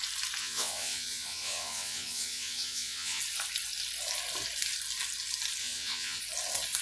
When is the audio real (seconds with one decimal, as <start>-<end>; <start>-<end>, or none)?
0.0-0.4; 3.2-5.6; 6.2-6.8